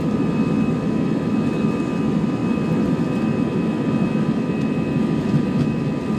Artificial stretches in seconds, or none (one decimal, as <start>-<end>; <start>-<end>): none